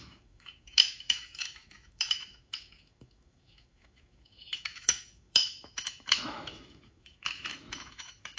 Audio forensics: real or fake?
fake